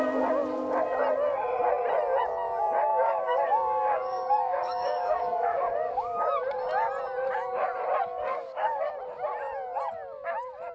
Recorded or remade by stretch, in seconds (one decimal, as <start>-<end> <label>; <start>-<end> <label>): 0.0-2.9 recorded; 2.9-6.2 remade; 6.2-8.1 recorded; 8.1-8.9 remade; 8.9-10.7 recorded